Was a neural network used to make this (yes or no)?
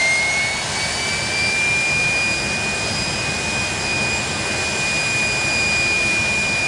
no